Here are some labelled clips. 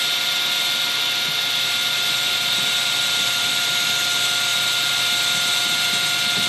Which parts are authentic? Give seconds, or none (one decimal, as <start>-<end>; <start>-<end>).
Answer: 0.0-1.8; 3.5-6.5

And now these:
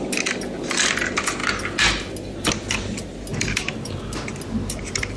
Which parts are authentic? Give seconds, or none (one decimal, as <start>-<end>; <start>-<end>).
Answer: 0.0-3.3; 4.0-5.2

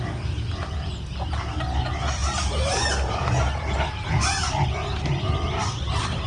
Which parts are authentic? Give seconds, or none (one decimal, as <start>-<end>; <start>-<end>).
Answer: 0.0-2.2